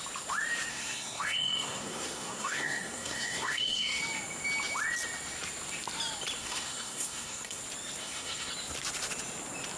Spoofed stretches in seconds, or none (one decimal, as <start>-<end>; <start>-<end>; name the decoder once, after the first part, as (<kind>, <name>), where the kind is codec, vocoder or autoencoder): 0.7-4.0 (codec, SNAC); 6.4-7.6; 8.0-8.5